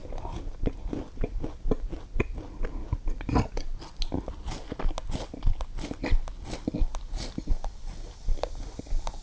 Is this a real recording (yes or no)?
yes